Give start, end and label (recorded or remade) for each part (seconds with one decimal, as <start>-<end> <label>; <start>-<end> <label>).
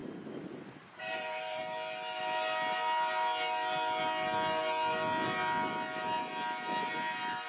0.0-1.6 remade; 1.6-7.5 recorded